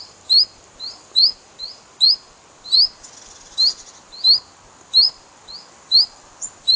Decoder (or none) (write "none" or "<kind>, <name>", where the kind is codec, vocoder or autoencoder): vocoder, BigVGAN v2